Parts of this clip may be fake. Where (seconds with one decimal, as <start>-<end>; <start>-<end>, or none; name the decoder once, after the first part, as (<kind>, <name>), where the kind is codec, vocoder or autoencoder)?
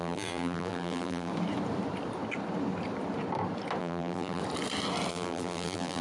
0.0-1.3 (vocoder, BigVGAN v2); 3.8-4.4; 5.1-6.0